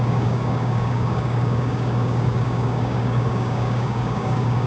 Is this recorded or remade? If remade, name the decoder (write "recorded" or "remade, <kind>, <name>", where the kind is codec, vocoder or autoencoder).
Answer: remade, codec, DAC